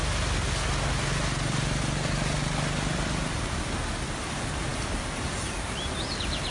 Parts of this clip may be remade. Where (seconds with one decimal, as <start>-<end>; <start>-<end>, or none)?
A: none